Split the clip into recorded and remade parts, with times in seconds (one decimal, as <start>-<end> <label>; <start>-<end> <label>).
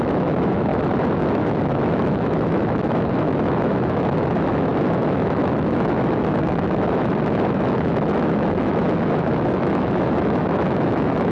0.0-0.7 remade; 0.7-1.2 recorded; 1.2-11.3 remade